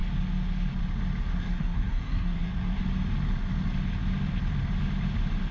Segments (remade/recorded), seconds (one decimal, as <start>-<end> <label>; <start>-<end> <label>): 0.0-1.3 recorded; 1.3-2.8 remade; 2.8-5.5 recorded